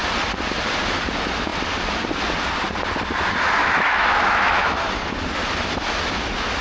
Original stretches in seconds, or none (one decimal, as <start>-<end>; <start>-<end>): 0.0-3.6; 4.8-6.6